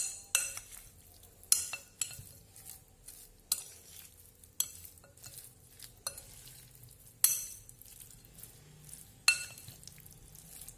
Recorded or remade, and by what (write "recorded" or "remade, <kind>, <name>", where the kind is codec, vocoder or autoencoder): recorded